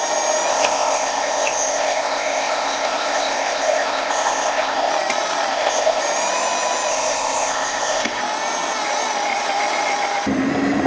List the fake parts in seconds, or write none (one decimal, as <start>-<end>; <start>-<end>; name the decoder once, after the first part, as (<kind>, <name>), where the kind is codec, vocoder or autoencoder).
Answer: 0.5-4.9 (codec, ZipCodec); 5.5-6.0; 6.9-8.2